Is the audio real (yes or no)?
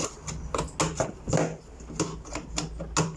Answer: yes